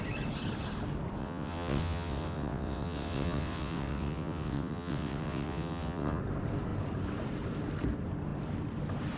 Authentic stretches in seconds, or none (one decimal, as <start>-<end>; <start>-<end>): 0.0-1.2; 6.2-9.2